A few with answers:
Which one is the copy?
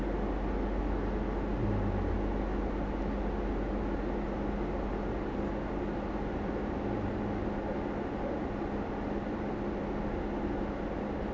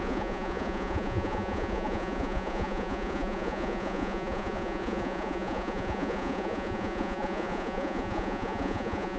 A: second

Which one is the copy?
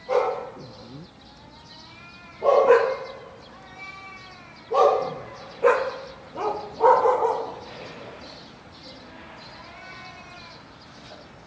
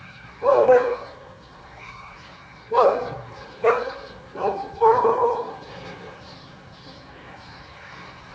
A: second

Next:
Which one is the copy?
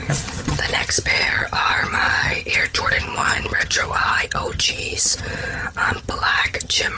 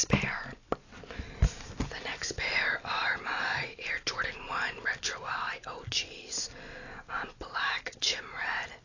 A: first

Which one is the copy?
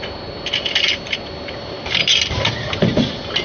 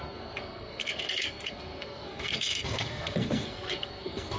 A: second